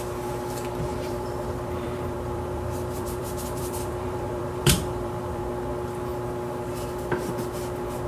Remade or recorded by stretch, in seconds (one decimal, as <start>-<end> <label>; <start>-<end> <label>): 0.0-0.9 recorded; 0.9-5.4 remade; 5.4-8.1 recorded